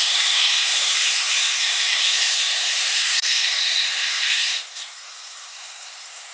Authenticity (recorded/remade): remade